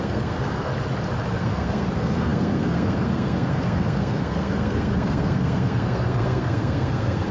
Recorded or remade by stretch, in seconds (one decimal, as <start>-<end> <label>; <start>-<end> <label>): 0.0-0.7 remade; 0.7-1.4 recorded; 1.4-7.3 remade